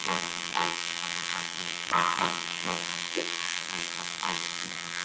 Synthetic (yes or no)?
yes